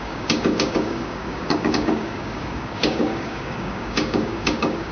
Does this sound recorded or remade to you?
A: remade